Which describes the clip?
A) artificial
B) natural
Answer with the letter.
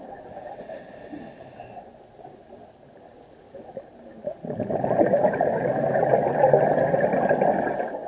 B